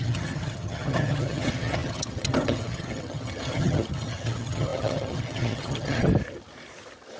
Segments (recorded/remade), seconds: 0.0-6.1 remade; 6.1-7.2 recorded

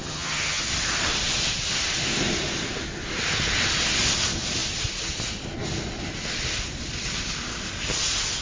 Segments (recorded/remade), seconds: 0.0-0.6 remade; 0.6-8.4 recorded

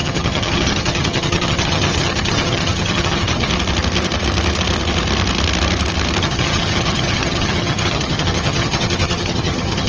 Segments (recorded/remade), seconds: 0.0-3.5 remade; 3.5-6.2 recorded; 6.2-9.9 remade

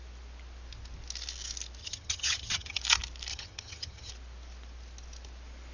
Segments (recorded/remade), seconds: 0.0-1.8 recorded; 1.8-2.8 remade; 2.8-3.3 recorded; 3.3-4.1 remade; 4.1-5.7 recorded

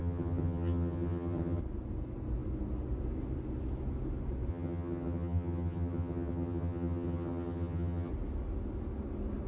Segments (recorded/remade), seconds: 0.0-1.6 remade; 1.6-4.5 recorded; 4.5-8.1 remade; 8.1-9.5 recorded